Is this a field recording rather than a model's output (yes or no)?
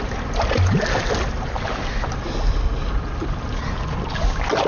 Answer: yes